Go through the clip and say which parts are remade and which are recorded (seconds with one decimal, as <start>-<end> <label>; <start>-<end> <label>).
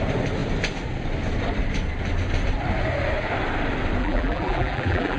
0.0-4.0 recorded; 4.0-5.2 remade